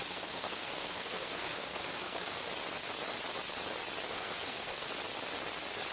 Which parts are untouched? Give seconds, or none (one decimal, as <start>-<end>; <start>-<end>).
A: 2.5-4.1; 4.9-5.9